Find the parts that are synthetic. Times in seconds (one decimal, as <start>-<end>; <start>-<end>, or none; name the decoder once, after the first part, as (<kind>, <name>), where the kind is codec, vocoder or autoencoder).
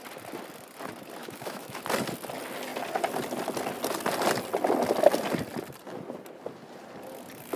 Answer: 1.2-1.8 (autoencoder, DAC-VAE)